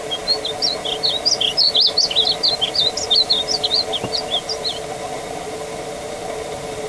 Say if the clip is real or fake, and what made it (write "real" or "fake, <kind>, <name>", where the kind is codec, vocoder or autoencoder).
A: real